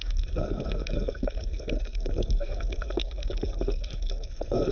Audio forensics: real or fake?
fake